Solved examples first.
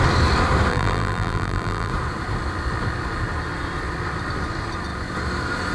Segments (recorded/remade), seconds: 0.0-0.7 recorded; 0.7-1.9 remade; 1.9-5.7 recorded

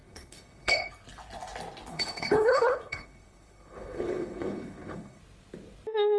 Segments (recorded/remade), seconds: 0.0-0.9 remade; 0.9-1.9 recorded; 1.9-5.2 remade; 5.2-6.2 recorded

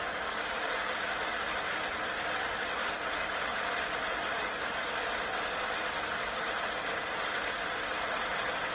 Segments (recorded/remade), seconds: 0.0-3.5 recorded; 3.5-4.9 remade; 4.9-8.7 recorded

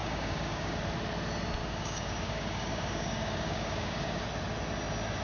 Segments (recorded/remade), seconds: 0.0-0.8 remade; 0.8-1.6 recorded; 1.6-4.2 remade; 4.2-5.2 recorded

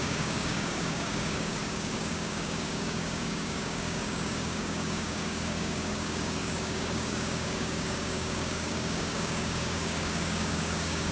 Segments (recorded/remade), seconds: 0.0-11.1 remade

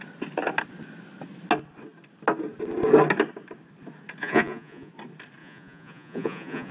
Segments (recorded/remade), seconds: 0.0-4.2 recorded; 4.2-4.9 remade; 4.9-5.4 recorded; 5.4-6.7 remade

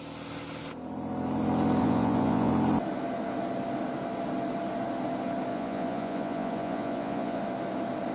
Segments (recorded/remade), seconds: 0.0-1.8 recorded; 1.8-2.5 remade; 2.5-5.5 recorded; 5.5-7.4 remade; 7.4-8.1 recorded